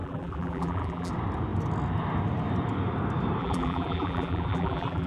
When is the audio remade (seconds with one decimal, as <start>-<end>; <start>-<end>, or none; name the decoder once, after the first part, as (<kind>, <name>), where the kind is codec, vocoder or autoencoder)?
0.0-1.1 (vocoder, BigVGAN v2); 3.4-5.1